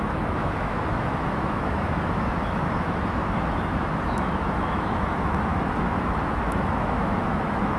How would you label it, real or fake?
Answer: fake